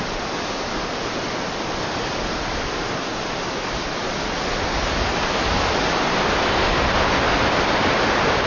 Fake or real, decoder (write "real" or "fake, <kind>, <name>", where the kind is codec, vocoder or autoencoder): fake, vocoder, BigVGAN v2